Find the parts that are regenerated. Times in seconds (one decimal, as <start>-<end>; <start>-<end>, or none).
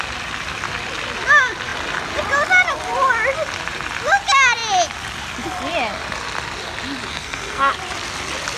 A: 7.1-7.7